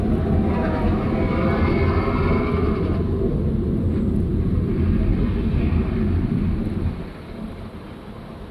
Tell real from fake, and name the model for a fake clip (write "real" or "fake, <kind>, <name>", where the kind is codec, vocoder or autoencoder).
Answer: real